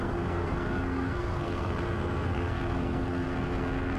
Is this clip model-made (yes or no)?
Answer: yes